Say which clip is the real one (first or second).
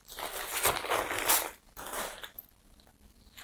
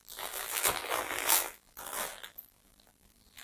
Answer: first